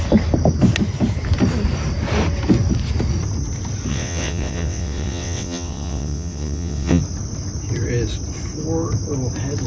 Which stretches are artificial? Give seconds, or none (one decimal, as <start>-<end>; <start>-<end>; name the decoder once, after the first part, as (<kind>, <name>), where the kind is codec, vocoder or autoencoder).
3.9-7.0 (vocoder, WaveNeXt)

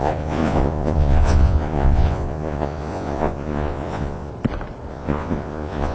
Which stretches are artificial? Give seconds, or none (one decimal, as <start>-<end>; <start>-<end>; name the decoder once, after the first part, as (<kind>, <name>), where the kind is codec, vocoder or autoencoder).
0.0-4.3 (vocoder, Vocos); 4.9-5.9

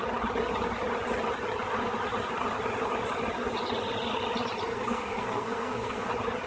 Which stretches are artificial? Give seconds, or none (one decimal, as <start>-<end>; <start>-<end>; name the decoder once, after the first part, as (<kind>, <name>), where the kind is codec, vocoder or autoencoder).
4.7-6.1 (codec, SNAC)

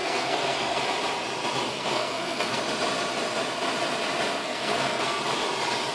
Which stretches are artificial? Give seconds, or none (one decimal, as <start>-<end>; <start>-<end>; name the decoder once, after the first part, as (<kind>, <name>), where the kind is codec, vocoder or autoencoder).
0.0-0.8 (codec, SNAC); 1.7-2.6; 4.4-5.2

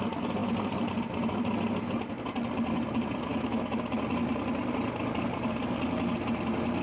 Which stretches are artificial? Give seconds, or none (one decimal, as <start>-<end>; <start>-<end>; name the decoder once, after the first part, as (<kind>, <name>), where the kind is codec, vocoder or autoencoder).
3.3-4.0 (autoencoder, DAC-VAE)

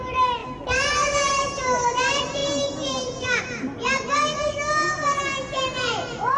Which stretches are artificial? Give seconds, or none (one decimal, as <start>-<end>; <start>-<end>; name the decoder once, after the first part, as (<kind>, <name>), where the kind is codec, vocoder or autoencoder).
none

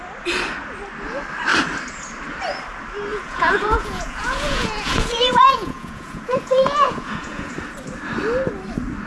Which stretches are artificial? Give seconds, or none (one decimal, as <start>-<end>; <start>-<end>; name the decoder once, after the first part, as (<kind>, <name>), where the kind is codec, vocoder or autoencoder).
3.1-7.5 (vocoder, Vocos)

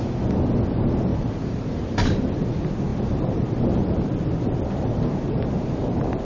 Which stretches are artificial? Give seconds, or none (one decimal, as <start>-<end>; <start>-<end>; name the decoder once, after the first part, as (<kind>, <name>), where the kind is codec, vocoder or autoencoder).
1.1-2.2 (vocoder, BigVGAN v2); 2.9-6.2